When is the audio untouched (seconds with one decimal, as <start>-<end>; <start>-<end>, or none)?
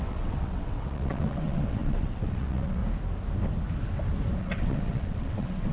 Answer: 2.8-4.4